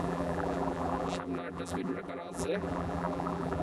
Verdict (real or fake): fake